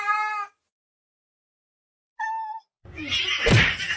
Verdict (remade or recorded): recorded